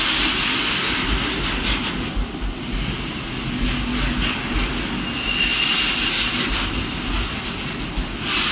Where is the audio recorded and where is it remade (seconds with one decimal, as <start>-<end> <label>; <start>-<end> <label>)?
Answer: 0.0-8.5 recorded